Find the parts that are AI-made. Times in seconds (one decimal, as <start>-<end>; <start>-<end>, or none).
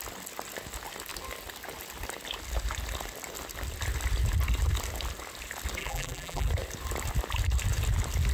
5.8-6.5